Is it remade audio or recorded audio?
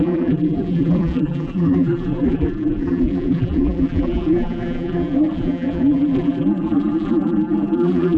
remade